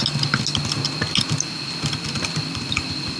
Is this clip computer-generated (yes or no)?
no